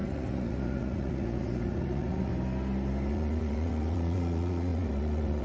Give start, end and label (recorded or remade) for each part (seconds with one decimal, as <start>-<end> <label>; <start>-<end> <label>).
0.0-2.3 remade; 2.3-3.1 recorded; 3.1-5.4 remade